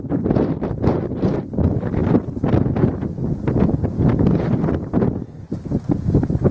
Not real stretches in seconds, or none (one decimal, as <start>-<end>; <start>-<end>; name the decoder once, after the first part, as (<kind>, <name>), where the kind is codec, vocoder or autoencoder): none